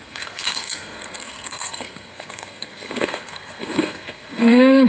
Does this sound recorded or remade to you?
remade